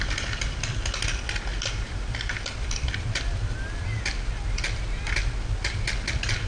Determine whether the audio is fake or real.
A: real